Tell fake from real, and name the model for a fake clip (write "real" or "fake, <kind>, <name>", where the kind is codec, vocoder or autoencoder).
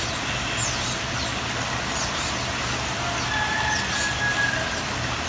real